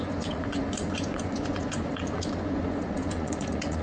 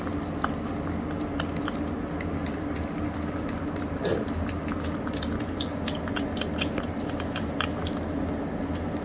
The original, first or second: second